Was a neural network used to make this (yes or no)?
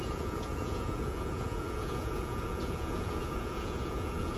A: yes